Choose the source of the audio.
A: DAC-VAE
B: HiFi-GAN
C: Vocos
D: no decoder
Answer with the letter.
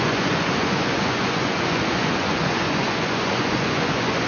C